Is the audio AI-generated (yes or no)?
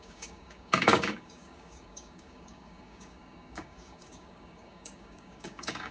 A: yes